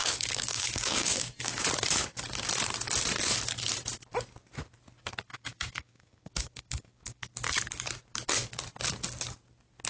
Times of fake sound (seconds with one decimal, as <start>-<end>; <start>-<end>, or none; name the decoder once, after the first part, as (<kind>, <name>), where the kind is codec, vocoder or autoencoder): 0.0-1.7 (codec, DAC); 5.3-7.3